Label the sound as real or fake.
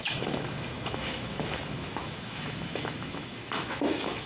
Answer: fake